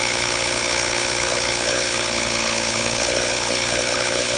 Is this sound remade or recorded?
remade